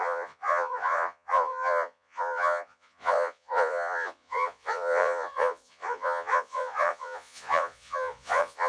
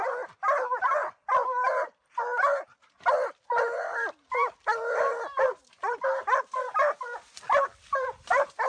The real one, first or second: second